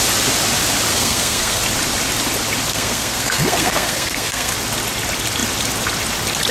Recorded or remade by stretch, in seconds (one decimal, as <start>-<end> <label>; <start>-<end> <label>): 0.0-0.9 recorded; 0.9-1.6 remade; 1.6-2.7 recorded; 2.7-4.5 remade; 4.5-6.5 recorded